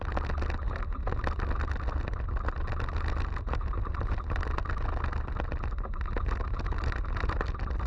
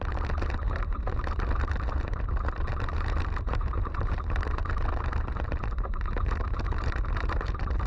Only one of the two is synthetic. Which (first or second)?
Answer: second